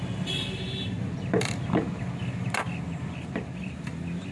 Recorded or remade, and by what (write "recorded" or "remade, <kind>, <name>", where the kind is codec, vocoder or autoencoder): recorded